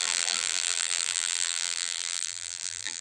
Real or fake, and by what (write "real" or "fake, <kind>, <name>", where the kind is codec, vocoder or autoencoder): fake, vocoder, BigVGAN v2